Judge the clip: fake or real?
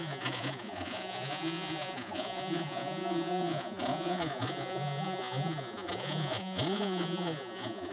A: fake